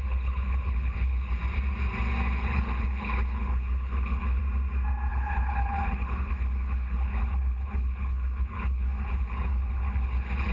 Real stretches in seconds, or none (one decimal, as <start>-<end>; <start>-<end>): 1.4-2.4; 4.4-5.1